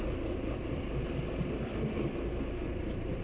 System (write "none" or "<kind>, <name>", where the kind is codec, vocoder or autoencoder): none